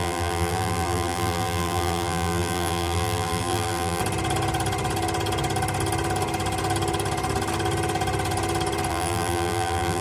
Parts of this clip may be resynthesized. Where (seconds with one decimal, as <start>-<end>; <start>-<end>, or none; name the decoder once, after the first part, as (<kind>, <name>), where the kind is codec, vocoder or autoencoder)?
0.0-4.0 (vocoder, BigVGAN v2); 8.9-10.0

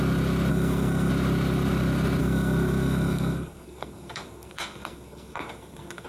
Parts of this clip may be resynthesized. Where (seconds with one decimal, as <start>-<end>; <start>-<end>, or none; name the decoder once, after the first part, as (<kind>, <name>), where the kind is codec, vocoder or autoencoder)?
0.5-1.1 (codec, SNAC); 2.2-6.1

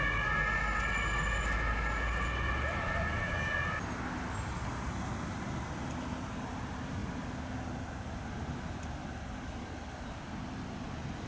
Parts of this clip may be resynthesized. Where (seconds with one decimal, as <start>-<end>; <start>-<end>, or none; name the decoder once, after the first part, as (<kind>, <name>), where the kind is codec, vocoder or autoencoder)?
none

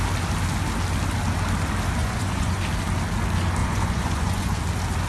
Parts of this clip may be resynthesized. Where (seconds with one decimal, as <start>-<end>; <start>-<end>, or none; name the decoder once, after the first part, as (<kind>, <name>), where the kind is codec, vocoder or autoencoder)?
2.0-2.6 (vocoder, Vocos); 3.6-4.6

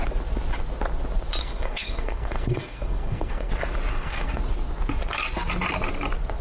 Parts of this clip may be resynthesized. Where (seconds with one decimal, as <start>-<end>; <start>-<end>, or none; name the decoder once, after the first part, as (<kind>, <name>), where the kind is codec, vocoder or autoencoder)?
1.4-3.5 (codec, SNAC); 3.9-4.4